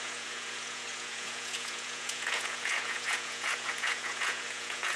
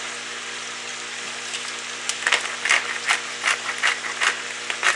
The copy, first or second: first